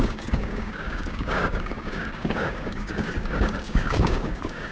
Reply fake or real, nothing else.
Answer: fake